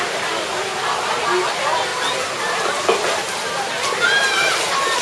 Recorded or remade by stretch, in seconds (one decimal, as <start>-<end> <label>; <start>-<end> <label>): 0.0-0.7 remade; 0.7-1.5 recorded; 1.5-1.9 remade; 1.9-4.3 recorded; 4.3-5.0 remade

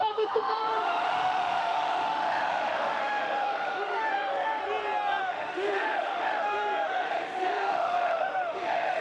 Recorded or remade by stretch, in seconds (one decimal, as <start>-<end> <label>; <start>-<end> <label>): 0.0-4.6 remade; 4.6-5.2 recorded; 5.2-9.0 remade